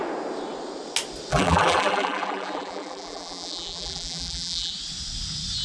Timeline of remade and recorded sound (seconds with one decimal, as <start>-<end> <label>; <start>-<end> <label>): 0.0-1.3 recorded; 1.3-4.7 remade; 4.7-5.6 recorded